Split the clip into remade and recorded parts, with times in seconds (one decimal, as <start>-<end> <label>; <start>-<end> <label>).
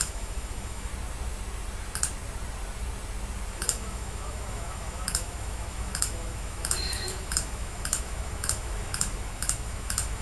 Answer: 0.0-0.9 remade; 0.9-3.5 recorded; 3.5-10.2 remade